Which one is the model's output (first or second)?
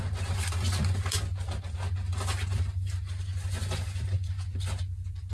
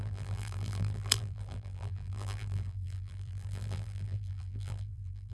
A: second